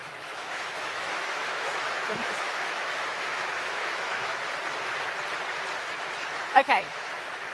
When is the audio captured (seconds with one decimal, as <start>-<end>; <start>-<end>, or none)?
4.3-6.5